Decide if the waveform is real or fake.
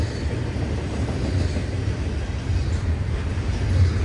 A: real